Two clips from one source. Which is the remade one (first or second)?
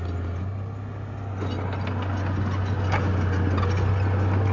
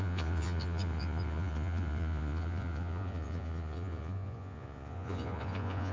second